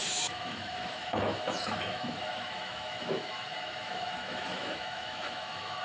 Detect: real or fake fake